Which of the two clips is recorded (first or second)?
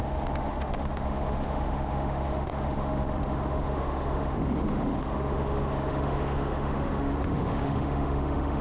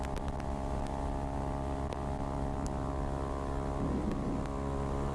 second